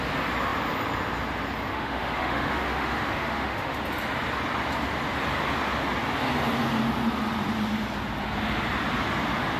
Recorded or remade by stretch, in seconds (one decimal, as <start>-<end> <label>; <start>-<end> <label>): 0.0-1.7 recorded; 1.7-3.8 remade; 3.8-9.6 recorded